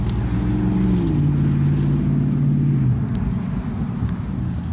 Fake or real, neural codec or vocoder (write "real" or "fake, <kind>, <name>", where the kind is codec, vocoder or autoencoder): real